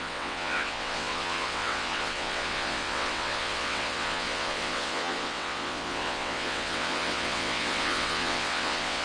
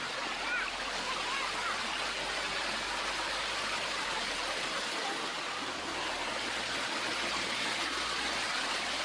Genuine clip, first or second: second